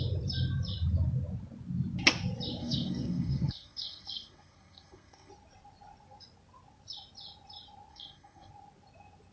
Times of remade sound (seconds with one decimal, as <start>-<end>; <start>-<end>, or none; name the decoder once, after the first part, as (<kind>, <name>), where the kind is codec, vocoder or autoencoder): 2.6-5.3 (codec, SNAC); 7.9-8.5